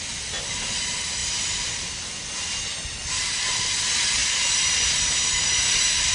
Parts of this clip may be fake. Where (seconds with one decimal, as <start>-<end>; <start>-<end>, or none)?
none